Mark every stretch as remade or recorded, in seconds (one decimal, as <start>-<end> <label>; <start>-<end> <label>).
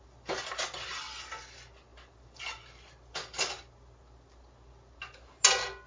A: 0.0-5.9 recorded